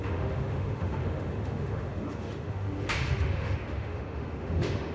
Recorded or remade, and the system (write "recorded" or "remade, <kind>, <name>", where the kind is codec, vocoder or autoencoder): remade, autoencoder, DAC-VAE